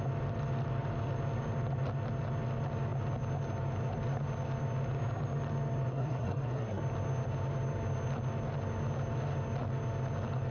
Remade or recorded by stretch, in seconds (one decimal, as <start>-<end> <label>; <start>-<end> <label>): 0.0-5.9 recorded; 5.9-6.8 remade; 6.8-10.5 recorded